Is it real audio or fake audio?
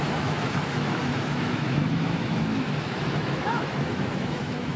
fake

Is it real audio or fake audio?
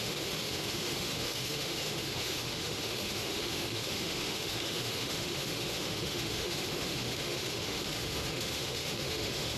fake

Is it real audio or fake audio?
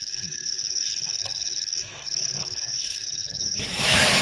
fake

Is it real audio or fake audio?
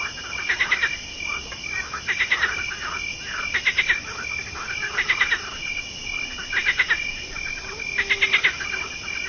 real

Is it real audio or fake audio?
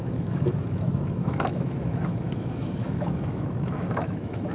fake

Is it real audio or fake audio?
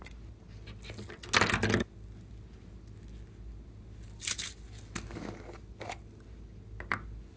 real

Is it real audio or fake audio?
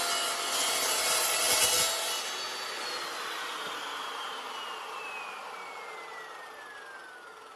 real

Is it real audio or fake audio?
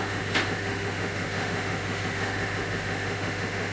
fake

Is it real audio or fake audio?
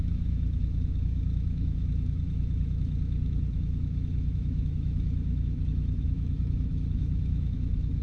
fake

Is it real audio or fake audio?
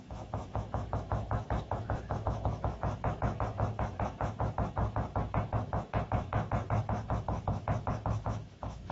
fake